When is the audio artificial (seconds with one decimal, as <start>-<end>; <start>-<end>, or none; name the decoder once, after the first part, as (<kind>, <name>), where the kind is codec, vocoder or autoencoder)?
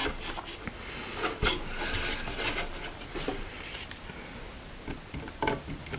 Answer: none